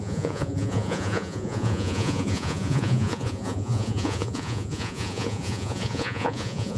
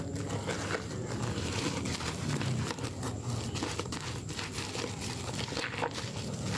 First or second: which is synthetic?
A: first